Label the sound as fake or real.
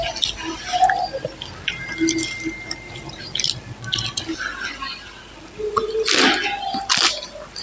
real